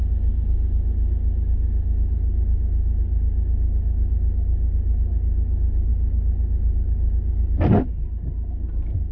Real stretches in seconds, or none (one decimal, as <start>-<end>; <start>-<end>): 0.0-9.1